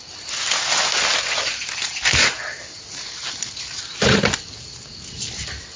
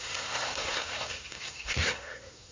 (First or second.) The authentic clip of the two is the first